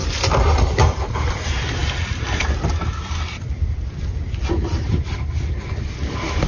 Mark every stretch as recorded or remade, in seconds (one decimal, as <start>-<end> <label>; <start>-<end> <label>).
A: 0.0-6.5 recorded

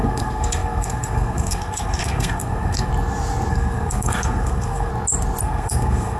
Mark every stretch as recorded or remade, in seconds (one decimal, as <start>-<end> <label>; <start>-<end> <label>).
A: 0.0-2.9 remade; 2.9-3.5 recorded; 3.5-4.9 remade; 4.9-5.4 recorded; 5.4-6.2 remade

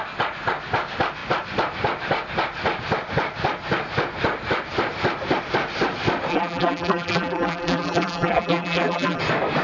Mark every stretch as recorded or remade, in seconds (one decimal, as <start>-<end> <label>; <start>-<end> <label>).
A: 0.0-6.3 recorded; 6.3-9.2 remade; 9.2-9.6 recorded

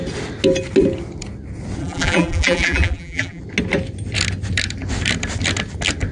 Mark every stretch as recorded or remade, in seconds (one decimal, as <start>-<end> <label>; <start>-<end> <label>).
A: 0.0-1.8 recorded; 1.8-3.4 remade; 3.4-6.1 recorded

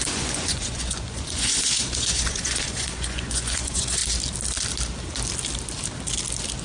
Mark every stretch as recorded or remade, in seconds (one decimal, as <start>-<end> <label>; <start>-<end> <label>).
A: 0.0-4.0 remade; 4.0-6.6 recorded